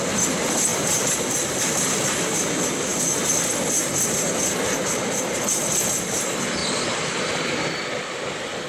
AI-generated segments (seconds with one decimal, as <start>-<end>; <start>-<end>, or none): 6.6-7.2